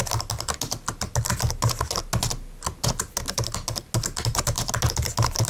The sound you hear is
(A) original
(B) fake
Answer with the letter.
A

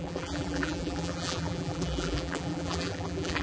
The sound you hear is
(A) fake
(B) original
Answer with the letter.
A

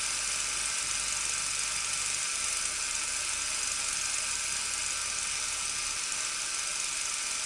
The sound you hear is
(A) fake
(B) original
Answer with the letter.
B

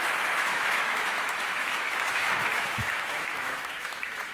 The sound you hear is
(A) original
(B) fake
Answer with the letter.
B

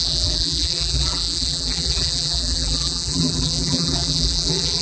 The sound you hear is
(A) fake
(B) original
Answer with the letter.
A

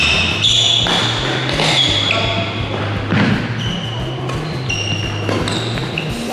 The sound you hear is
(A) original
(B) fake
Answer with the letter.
A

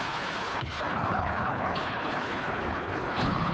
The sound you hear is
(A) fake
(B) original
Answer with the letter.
A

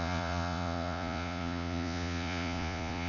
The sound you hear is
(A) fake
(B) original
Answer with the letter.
A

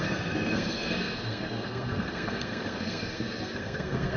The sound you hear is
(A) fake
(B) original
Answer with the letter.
A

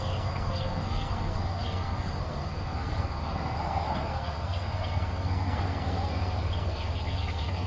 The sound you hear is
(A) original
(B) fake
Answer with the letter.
B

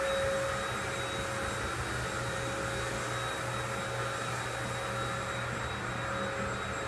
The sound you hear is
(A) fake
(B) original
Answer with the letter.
B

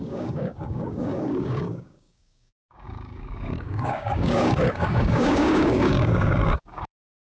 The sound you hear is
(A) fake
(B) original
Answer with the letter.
A